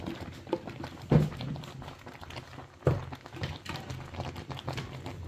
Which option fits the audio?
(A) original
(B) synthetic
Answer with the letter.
A